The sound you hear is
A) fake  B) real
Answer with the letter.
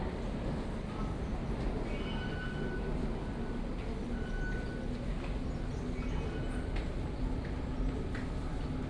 B